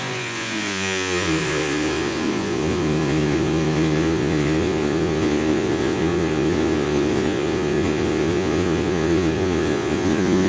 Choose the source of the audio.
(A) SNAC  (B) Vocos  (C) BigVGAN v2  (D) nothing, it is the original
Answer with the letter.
B